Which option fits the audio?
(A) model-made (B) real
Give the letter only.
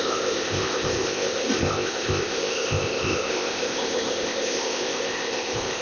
A